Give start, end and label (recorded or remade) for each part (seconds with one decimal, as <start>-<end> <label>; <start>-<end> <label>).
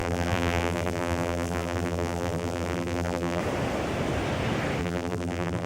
0.0-3.4 remade; 3.4-4.8 recorded; 4.8-5.7 remade